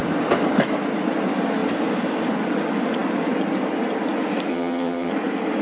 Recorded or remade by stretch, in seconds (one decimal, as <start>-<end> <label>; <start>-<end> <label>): 0.0-4.5 recorded; 4.5-5.1 remade; 5.1-5.6 recorded